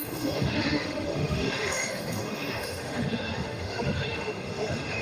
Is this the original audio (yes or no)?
no